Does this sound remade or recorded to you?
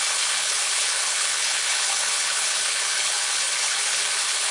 remade